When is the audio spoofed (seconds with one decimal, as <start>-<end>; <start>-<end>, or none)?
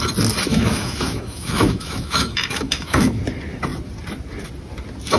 0.5-3.2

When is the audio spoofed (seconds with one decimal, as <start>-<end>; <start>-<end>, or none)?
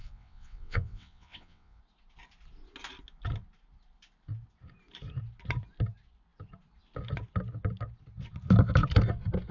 0.0-1.8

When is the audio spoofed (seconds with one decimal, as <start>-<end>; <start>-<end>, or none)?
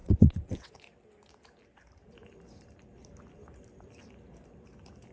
0.0-0.8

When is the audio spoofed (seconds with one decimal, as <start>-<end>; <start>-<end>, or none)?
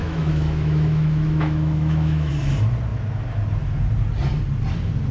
0.0-2.3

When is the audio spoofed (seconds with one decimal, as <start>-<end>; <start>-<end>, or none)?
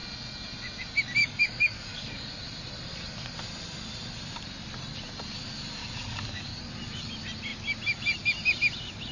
1.2-2.3; 5.8-6.6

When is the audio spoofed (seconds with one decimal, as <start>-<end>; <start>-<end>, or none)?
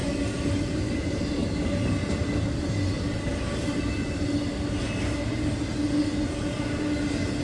none